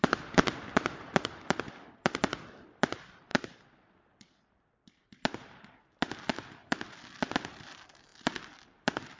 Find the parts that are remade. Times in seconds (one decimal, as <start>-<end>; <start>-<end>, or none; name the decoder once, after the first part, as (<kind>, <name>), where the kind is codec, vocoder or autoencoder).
0.0-9.2 (vocoder, BigVGAN v2)

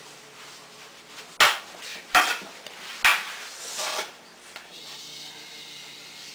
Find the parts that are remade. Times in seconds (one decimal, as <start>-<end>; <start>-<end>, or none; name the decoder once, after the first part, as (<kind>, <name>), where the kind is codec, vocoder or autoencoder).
1.9-2.6 (vocoder, BigVGAN v2)

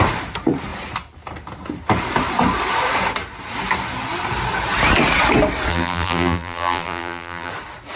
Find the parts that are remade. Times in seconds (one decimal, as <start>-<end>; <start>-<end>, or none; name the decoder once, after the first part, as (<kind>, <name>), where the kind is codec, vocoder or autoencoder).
5.7-7.5 (vocoder, BigVGAN v2)

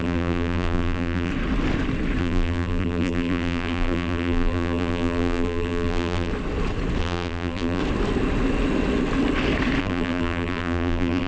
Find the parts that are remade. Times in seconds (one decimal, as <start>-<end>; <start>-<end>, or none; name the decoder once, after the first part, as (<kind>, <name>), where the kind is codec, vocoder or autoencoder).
0.0-1.3 (vocoder, BigVGAN v2); 2.2-6.3; 7.0-7.8; 9.8-11.3

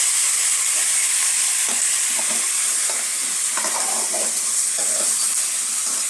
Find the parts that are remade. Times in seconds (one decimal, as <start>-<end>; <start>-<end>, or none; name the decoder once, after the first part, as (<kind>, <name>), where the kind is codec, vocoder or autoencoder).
0.9-4.4 (vocoder, BigVGAN v2)